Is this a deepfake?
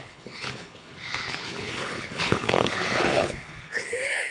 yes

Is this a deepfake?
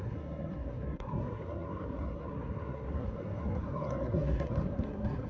yes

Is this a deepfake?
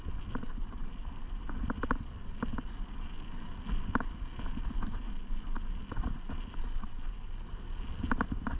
no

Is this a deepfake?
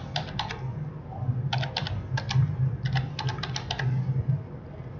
no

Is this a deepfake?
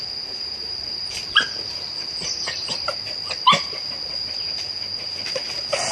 no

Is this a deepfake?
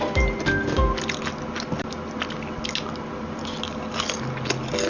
no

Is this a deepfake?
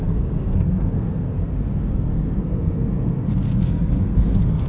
yes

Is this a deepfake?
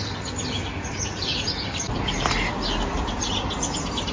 no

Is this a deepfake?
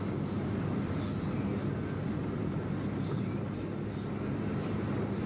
no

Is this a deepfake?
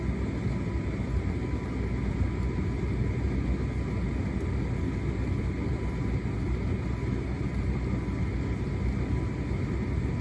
no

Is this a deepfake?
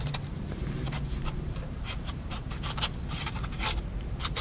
yes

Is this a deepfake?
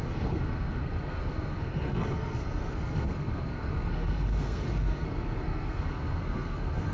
yes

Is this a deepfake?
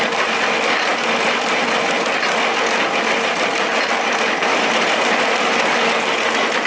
no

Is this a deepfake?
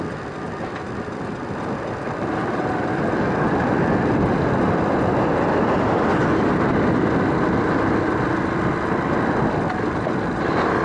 no